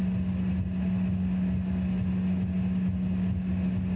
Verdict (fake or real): real